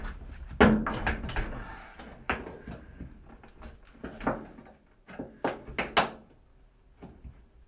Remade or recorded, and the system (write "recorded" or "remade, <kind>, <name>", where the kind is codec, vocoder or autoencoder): recorded